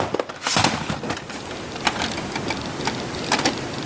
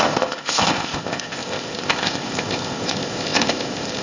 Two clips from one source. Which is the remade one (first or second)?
second